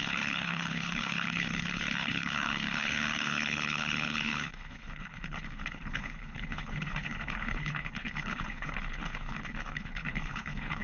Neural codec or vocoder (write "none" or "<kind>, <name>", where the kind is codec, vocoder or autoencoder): codec, HILCodec